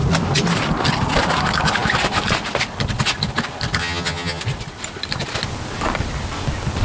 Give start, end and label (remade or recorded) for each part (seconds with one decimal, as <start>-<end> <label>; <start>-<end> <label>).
0.0-3.8 recorded; 3.8-4.4 remade; 4.4-6.8 recorded